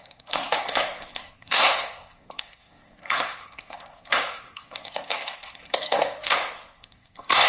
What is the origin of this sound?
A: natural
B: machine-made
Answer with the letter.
B